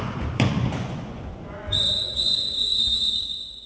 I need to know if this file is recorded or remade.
remade